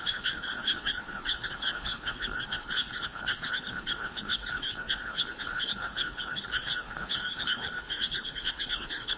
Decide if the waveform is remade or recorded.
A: remade